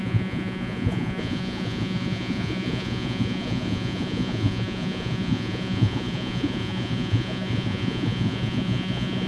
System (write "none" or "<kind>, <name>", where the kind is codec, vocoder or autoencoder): vocoder, Vocos